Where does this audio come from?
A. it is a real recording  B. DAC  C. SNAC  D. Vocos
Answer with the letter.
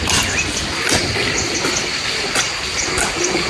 A